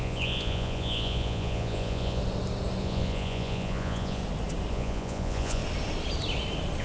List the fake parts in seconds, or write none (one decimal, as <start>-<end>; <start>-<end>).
0.0-2.2; 2.8-4.2; 4.7-5.6